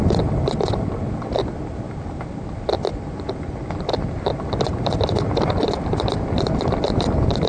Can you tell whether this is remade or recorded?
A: recorded